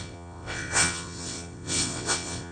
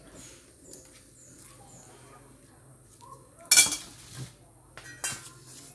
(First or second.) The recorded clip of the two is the second